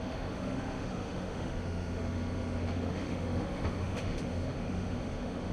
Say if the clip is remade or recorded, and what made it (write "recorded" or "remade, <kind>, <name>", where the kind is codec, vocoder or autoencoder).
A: remade, autoencoder, DAC-VAE